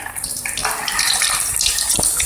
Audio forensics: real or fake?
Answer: fake